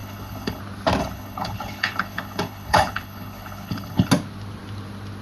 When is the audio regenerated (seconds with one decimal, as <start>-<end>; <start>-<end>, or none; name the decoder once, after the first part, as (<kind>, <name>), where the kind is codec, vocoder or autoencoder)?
0.0-0.6 (codec, HILCodec); 1.0-4.1